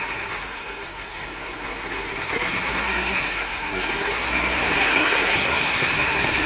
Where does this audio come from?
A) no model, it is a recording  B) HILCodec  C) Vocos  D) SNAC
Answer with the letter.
D